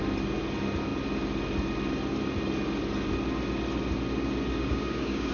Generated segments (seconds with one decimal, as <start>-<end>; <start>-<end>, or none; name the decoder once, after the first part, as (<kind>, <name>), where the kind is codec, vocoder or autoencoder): 4.5-5.3 (codec, DAC)